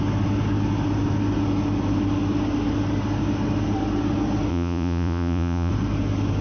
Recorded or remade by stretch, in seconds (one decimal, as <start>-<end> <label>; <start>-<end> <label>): 0.0-4.5 recorded; 4.5-5.7 remade; 5.7-6.4 recorded